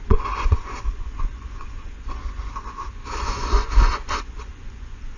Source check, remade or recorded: remade